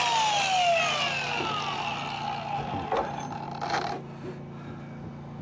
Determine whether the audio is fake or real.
real